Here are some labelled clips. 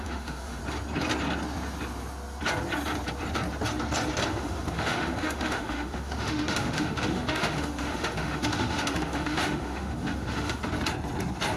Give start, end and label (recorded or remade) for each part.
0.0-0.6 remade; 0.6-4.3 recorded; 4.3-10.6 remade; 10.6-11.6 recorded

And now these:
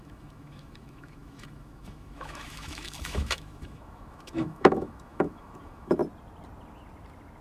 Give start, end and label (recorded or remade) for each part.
0.0-6.0 remade; 6.0-7.4 recorded

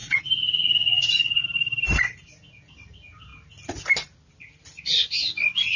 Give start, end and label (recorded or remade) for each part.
0.0-1.4 remade; 1.4-5.8 recorded

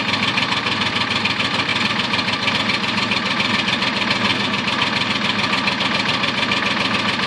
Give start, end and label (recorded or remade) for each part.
0.0-7.3 recorded